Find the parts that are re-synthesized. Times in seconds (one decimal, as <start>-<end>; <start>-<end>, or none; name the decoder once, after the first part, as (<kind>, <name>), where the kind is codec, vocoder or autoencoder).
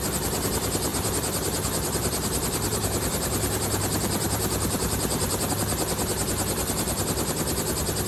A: 0.9-5.5 (vocoder, BigVGAN v2)